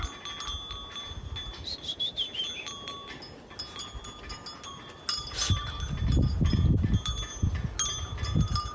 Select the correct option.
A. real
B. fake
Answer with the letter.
A